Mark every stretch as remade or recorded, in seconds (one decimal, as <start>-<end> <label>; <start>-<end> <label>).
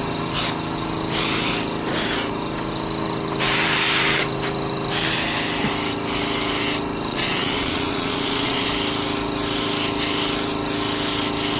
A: 0.0-7.1 recorded; 7.1-8.7 remade; 8.7-11.6 recorded